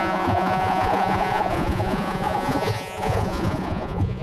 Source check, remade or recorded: remade